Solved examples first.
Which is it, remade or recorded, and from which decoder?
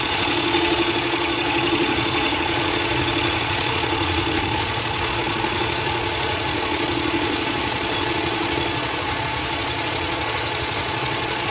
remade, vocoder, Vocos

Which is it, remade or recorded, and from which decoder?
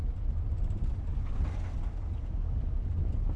recorded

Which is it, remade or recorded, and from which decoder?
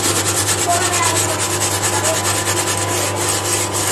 recorded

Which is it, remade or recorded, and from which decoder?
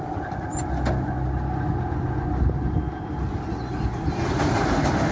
recorded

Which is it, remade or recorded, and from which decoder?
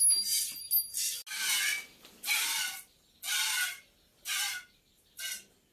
recorded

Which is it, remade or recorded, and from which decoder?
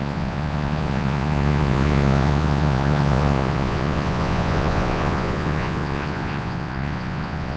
remade, vocoder, Vocos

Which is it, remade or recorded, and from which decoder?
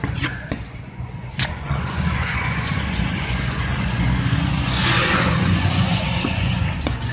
remade, vocoder, Vocos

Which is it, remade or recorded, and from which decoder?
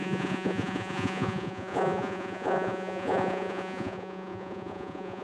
remade, vocoder, Vocos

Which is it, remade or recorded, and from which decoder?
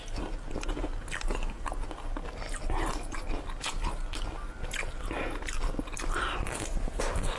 recorded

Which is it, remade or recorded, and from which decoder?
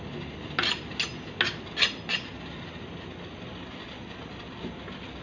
recorded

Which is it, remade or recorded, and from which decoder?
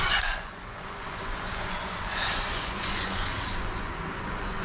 remade, vocoder, Vocos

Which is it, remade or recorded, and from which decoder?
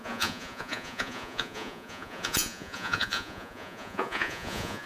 remade, vocoder, Vocos